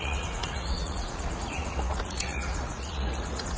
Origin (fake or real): fake